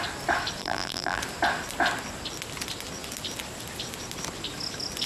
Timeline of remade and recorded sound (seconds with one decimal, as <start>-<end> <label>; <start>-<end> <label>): 0.0-0.6 recorded; 0.6-1.2 remade; 1.2-5.1 recorded